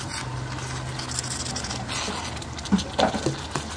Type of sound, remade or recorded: recorded